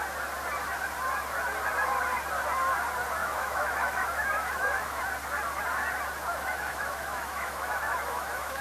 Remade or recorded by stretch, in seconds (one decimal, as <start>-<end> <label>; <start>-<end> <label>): 0.0-3.2 recorded; 3.2-5.0 remade; 5.0-6.3 recorded; 6.3-8.6 remade